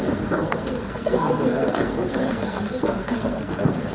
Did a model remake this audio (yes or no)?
yes